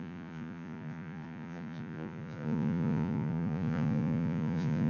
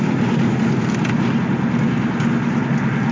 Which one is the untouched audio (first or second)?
second